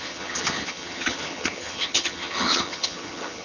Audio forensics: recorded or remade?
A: remade